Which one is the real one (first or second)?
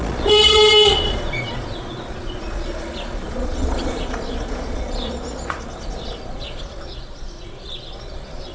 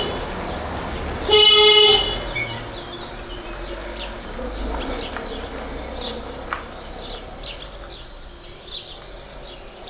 second